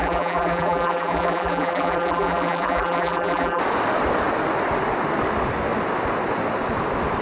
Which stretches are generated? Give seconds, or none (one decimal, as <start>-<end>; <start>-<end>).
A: 0.0-3.6